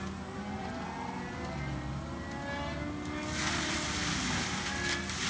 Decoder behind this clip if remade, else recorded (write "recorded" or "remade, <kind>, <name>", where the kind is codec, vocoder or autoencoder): recorded